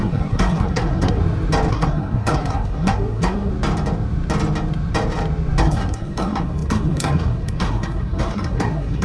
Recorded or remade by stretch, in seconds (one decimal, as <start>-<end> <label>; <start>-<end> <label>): 0.0-1.2 remade; 1.2-1.7 recorded; 1.7-3.5 remade; 3.5-5.6 recorded; 5.6-9.0 remade